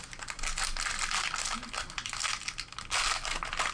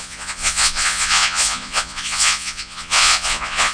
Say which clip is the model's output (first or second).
second